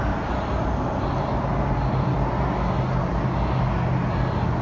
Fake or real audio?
real